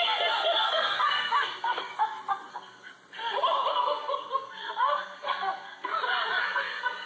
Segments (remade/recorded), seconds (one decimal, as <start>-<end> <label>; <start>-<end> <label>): 0.0-1.9 remade; 1.9-2.5 recorded; 2.5-2.9 remade; 2.9-3.7 recorded; 3.7-5.9 remade; 5.9-6.4 recorded; 6.4-7.1 remade